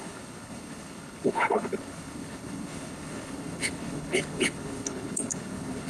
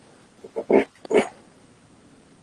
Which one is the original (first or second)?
second